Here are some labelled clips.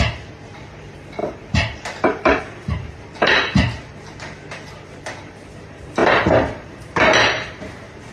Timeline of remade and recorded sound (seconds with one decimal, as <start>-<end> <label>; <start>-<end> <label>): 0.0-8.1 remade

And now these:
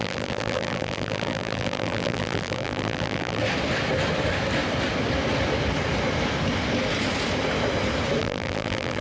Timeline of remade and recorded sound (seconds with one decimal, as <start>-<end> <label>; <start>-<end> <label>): 0.0-3.4 remade; 3.4-8.2 recorded; 8.2-9.0 remade

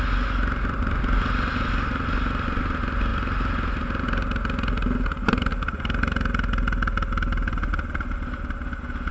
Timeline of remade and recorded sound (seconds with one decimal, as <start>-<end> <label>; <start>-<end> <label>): 0.0-9.1 recorded

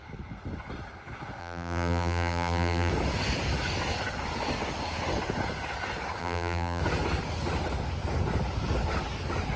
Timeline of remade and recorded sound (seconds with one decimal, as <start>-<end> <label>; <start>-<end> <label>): 0.0-1.4 recorded; 1.4-2.9 remade; 2.9-6.2 recorded; 6.2-6.8 remade; 6.8-9.6 recorded